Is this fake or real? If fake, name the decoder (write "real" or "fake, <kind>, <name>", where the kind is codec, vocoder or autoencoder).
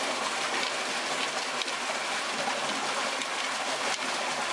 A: real